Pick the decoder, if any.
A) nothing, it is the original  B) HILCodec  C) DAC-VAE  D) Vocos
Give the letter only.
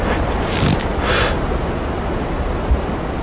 A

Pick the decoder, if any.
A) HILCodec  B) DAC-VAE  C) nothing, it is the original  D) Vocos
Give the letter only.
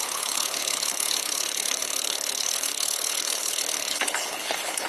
A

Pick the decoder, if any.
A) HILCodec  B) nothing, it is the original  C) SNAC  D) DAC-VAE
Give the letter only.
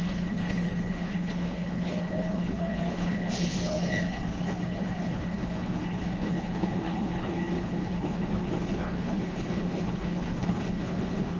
A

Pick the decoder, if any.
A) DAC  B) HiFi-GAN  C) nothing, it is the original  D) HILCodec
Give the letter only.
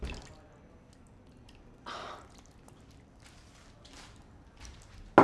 C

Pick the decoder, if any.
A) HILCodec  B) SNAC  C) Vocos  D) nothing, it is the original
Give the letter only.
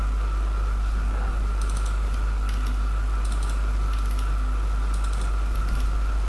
D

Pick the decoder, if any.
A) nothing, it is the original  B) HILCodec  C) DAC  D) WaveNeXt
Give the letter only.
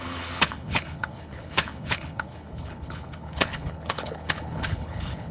B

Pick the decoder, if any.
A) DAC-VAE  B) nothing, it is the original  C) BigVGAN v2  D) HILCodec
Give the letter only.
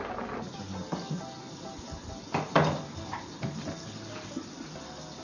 B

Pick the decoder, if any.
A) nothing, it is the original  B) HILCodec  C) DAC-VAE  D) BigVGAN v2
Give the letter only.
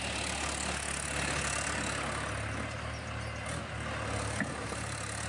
A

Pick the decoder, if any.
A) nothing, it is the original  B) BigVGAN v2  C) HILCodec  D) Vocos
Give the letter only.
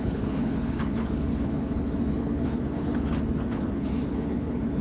C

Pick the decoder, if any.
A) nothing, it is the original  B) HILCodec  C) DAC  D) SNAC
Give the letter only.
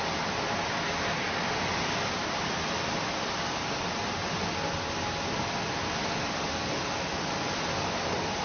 A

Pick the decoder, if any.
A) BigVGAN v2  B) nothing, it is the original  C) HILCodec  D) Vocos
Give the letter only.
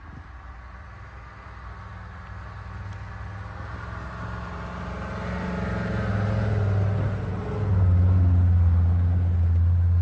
B